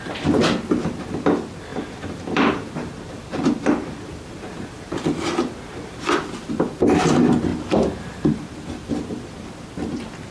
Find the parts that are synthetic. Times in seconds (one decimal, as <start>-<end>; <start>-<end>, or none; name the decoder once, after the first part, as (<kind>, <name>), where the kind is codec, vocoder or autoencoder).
1.7-6.5 (vocoder, BigVGAN v2); 7.5-8.9